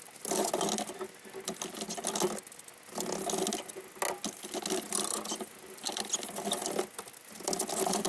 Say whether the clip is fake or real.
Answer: real